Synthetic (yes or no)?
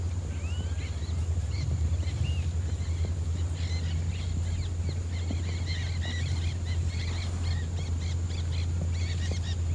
no